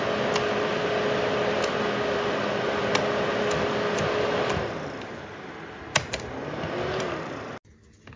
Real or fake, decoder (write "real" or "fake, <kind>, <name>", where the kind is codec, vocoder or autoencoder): real